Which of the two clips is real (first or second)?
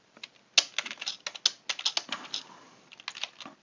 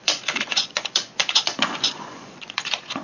first